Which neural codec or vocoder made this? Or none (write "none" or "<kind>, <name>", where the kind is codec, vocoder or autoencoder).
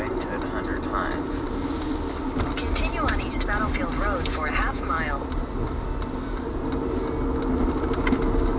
none